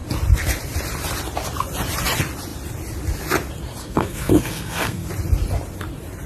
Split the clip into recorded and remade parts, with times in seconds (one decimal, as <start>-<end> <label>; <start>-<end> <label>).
0.0-3.8 recorded; 3.8-5.1 remade; 5.1-6.3 recorded